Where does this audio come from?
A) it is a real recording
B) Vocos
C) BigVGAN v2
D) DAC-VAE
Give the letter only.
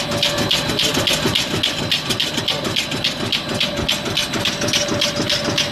A